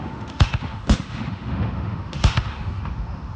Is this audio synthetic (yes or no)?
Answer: yes